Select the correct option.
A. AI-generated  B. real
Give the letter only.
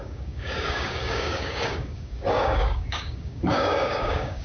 A